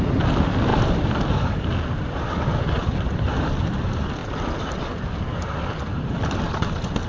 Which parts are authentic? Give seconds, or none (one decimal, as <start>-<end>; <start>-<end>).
0.0-0.7; 1.7-2.8; 3.8-7.1